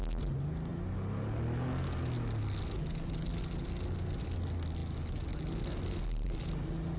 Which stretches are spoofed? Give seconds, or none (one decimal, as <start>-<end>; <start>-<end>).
none